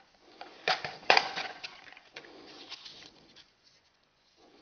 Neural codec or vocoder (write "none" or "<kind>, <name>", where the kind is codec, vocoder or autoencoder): vocoder, Vocos